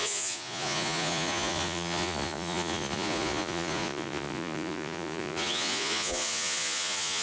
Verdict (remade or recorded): remade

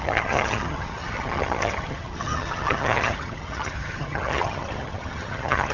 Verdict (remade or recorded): remade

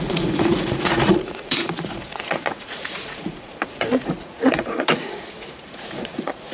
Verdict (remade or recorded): remade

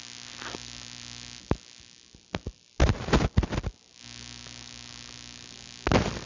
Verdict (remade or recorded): recorded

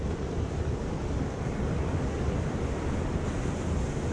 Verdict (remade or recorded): recorded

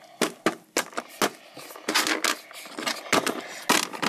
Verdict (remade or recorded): recorded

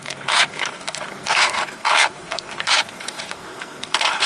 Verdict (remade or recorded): remade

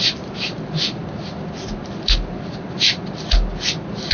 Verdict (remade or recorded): recorded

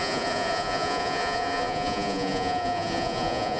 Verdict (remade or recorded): remade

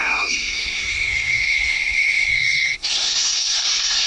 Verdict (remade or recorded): remade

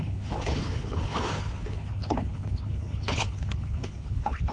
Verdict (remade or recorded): remade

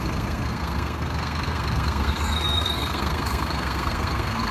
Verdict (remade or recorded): remade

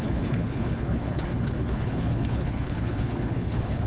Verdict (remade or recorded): remade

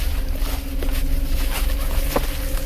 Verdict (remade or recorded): recorded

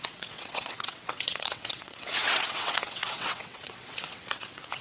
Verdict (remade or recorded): remade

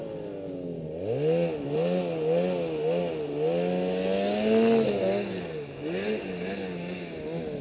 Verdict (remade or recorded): recorded